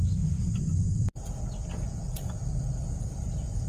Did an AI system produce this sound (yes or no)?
no